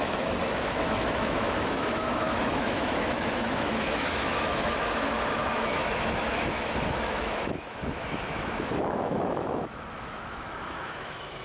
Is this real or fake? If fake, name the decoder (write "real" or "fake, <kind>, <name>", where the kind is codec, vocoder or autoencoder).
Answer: fake, autoencoder, DAC-VAE